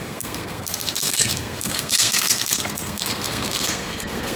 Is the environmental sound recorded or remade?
remade